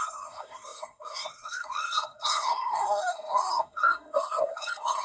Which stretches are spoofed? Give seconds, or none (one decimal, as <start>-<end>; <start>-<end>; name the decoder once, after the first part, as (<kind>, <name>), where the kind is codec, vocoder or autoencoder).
0.0-5.0 (codec, SNAC)